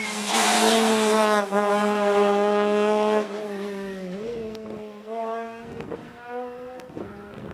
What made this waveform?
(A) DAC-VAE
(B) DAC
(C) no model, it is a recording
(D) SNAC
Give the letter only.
D